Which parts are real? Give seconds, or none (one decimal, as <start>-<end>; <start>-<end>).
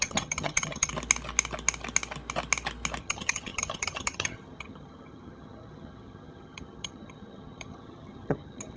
0.9-3.0